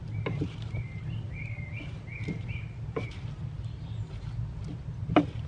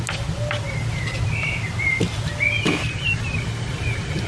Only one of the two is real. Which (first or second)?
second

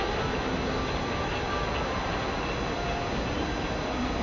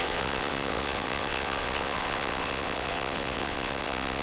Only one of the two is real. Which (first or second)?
first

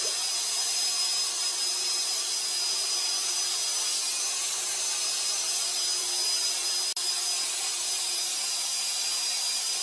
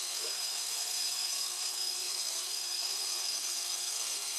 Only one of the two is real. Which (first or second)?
first